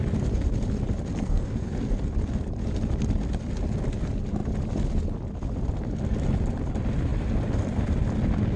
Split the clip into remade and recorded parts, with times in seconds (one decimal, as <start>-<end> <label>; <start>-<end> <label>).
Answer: 0.0-1.1 recorded; 1.1-1.8 remade; 1.8-8.6 recorded